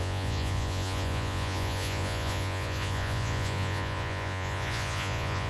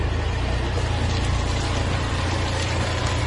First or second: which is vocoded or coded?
first